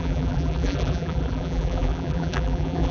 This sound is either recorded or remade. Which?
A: remade